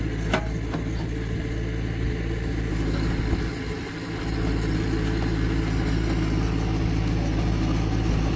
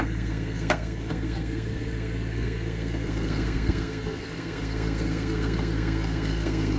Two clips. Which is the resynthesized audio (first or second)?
second